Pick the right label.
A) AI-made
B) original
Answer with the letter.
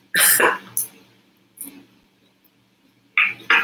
B